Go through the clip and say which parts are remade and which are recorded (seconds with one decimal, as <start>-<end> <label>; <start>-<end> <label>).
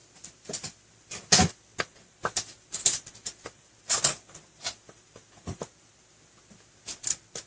0.0-7.5 recorded